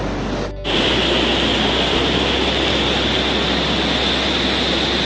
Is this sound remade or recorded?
recorded